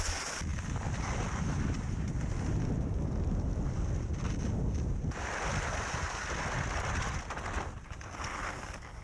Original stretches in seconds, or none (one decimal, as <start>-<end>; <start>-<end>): 0.0-9.0